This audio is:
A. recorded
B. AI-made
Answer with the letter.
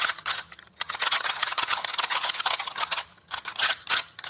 B